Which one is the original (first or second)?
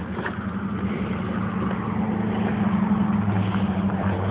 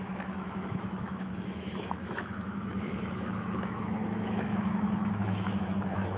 first